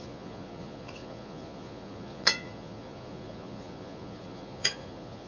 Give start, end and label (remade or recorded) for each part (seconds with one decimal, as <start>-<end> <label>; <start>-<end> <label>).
0.0-5.3 remade